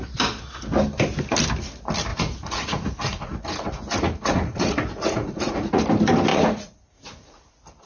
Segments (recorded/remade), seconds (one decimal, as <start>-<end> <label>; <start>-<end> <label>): 0.0-2.1 recorded; 2.1-5.8 remade; 5.8-6.3 recorded; 6.3-7.5 remade; 7.5-7.9 recorded

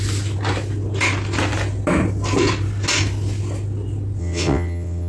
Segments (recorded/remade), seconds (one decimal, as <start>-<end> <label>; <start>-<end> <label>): 0.0-4.2 recorded; 4.2-5.1 remade

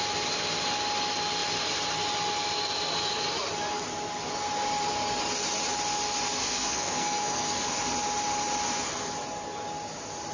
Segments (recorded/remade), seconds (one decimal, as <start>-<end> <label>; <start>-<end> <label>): 0.0-6.4 recorded; 6.4-7.7 remade; 7.7-10.3 recorded

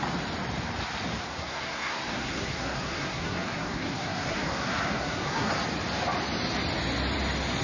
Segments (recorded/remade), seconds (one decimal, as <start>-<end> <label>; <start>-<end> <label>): 0.0-1.3 recorded; 1.3-5.5 remade; 5.5-7.6 recorded